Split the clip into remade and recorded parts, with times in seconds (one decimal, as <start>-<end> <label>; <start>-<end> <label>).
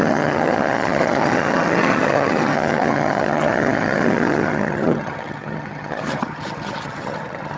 0.0-7.6 remade